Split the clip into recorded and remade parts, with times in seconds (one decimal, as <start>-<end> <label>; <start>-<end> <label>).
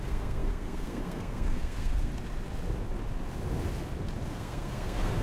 0.0-2.1 remade; 2.1-4.3 recorded; 4.3-5.2 remade